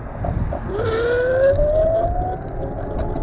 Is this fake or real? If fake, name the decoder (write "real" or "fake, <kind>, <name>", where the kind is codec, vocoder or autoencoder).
real